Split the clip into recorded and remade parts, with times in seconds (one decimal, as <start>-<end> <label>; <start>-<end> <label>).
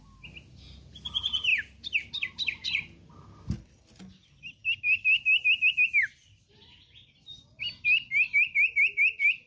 0.0-9.5 recorded